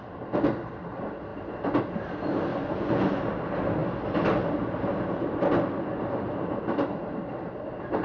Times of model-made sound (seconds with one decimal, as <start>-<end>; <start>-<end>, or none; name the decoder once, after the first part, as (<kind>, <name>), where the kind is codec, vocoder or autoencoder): 2.5-3.2 (vocoder, Vocos)